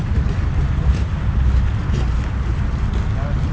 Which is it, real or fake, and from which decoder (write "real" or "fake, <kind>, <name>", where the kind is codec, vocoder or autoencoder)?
real